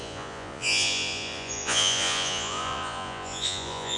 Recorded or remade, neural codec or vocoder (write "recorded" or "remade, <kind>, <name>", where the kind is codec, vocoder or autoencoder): remade, vocoder, Vocos